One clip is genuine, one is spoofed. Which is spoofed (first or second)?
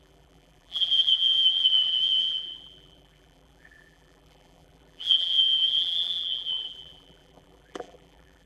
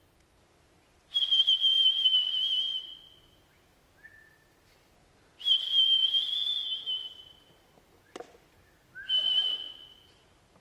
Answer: first